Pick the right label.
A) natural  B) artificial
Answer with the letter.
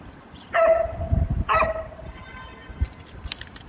B